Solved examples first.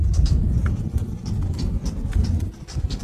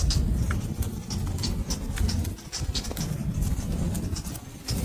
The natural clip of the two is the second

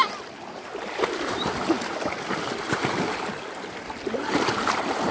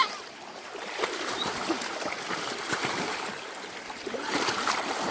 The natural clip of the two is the first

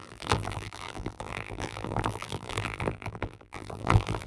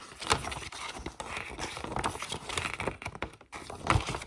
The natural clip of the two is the second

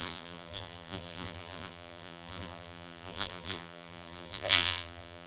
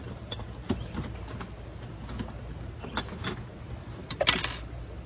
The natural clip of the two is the second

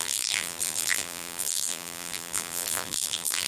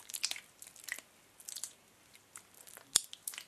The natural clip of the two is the second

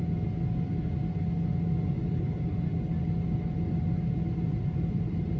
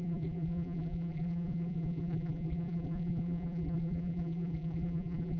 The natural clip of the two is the first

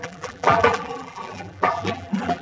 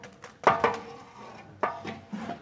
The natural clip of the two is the second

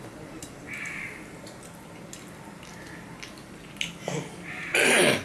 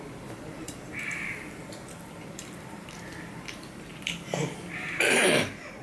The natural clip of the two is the first